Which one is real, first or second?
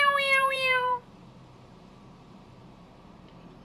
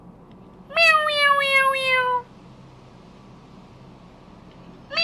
second